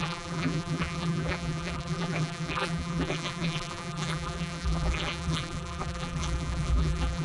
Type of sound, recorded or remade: remade